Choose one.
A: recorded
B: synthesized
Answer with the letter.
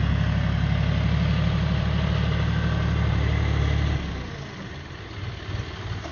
A